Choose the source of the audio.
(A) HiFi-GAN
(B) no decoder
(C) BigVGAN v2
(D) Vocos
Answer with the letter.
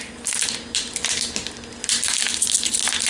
B